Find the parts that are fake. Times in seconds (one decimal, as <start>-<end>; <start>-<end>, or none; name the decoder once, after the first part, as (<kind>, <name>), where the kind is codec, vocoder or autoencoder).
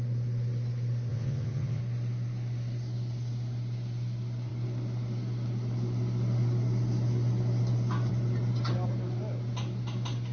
1.1-1.8 (vocoder, WaveNeXt)